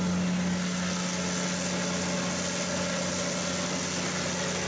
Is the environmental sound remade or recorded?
recorded